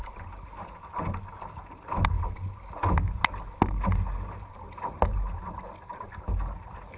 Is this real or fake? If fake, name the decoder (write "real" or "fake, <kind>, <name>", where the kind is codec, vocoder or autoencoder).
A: real